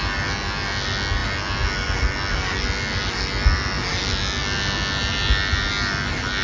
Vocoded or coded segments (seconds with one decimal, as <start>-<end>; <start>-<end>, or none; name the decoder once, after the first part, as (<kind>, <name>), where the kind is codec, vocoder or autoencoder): none